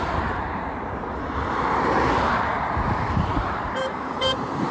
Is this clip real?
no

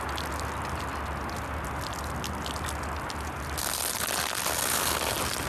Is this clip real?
yes